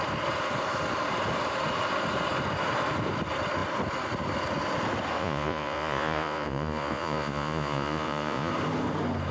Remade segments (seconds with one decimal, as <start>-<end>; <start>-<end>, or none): 5.2-8.5